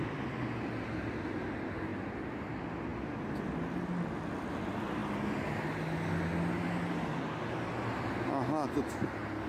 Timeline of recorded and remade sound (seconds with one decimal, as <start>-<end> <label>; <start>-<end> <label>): 0.0-9.5 recorded